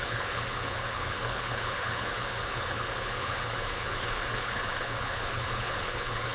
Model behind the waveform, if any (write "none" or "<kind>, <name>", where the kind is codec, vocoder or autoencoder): codec, HILCodec